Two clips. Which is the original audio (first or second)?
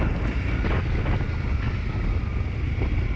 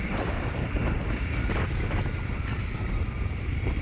first